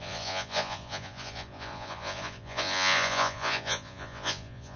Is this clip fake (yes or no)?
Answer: yes